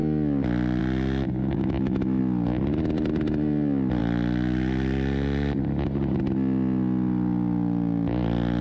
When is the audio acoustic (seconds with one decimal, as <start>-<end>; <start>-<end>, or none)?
0.0-1.4; 2.2-8.6